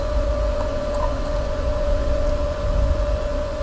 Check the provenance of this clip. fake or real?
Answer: fake